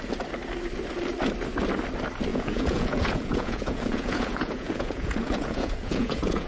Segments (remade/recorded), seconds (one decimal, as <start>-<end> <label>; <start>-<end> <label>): 0.0-2.3 recorded; 2.3-6.5 remade